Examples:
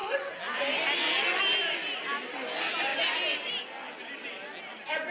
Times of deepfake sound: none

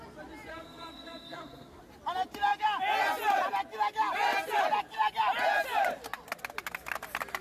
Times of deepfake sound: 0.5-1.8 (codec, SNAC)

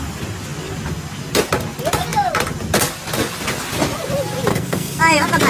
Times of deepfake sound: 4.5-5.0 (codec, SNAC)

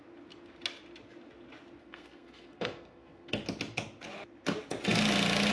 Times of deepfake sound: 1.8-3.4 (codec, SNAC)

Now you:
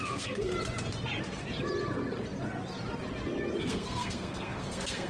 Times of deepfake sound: 0.0-0.5 (codec, SNAC); 3.6-5.1

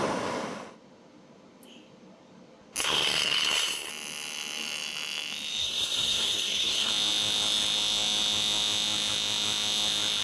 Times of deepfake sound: 2.8-3.9 (codec, SNAC); 5.6-6.9

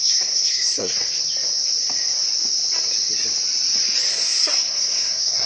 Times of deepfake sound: 0.0-1.0 (codec, SNAC); 4.1-5.4

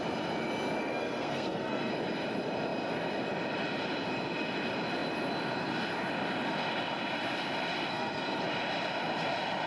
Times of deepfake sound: 0.8-1.9 (codec, SNAC); 7.9-8.4